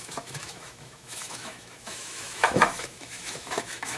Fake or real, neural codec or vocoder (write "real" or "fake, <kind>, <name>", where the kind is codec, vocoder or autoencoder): fake, autoencoder, DAC-VAE